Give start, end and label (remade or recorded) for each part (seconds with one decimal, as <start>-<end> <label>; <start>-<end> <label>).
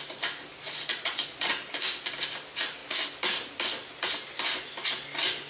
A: 0.0-0.5 recorded; 0.5-1.5 remade; 1.5-5.5 recorded